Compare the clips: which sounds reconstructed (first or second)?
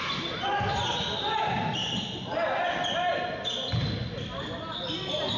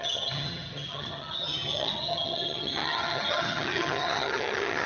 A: second